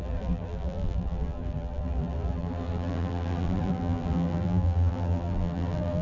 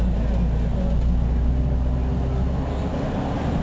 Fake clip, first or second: first